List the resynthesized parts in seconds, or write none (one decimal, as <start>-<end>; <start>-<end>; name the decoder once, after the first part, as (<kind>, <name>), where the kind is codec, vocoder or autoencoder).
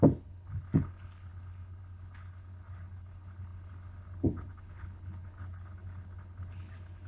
0.0-7.1 (codec, HILCodec)